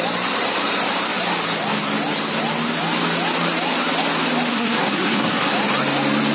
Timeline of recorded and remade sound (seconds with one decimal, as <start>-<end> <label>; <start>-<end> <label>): 0.0-4.5 recorded; 4.5-5.5 remade; 5.5-6.3 recorded